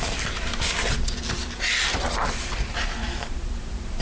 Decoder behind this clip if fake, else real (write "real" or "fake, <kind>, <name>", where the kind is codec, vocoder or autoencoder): fake, vocoder, BigVGAN v2